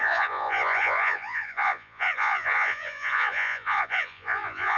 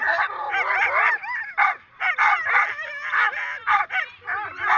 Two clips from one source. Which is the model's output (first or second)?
first